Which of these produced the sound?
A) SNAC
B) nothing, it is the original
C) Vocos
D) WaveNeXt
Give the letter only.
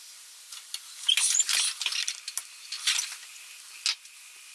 B